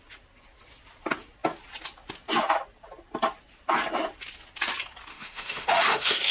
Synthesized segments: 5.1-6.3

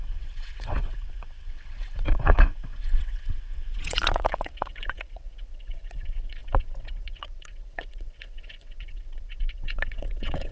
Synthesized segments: 0.0-10.5